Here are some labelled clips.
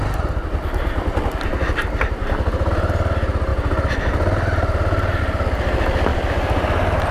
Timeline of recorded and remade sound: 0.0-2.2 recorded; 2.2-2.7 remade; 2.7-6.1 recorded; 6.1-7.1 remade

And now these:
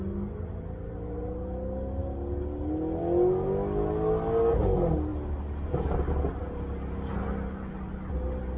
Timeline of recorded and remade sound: 0.0-8.6 recorded

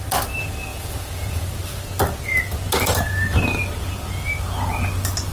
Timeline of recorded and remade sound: 0.0-0.7 recorded; 0.7-1.6 remade; 1.6-5.3 recorded

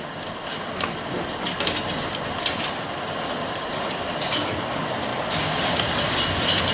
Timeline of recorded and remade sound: 0.0-6.7 recorded

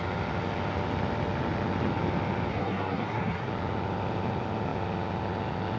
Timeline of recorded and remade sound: 0.0-2.5 recorded; 2.5-3.5 remade; 3.5-5.8 recorded